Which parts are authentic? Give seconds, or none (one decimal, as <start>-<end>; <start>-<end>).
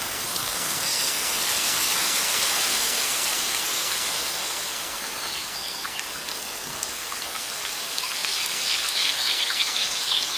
none